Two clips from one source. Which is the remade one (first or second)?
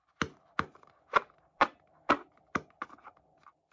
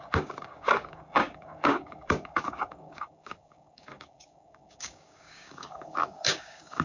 second